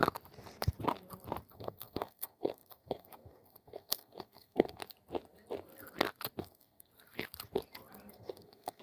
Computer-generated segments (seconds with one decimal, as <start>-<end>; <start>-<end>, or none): 1.5-4.8; 6.4-6.9; 8.1-8.8